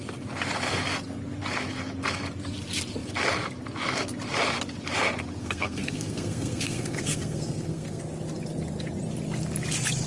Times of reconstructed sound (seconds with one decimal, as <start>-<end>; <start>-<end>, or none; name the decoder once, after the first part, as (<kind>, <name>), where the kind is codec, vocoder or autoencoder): 5.4-8.0 (codec, SNAC)